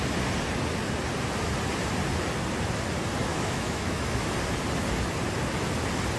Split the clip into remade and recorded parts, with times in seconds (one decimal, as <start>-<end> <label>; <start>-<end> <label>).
0.0-3.3 recorded; 3.3-4.3 remade; 4.3-6.2 recorded